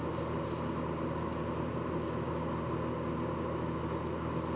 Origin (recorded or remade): recorded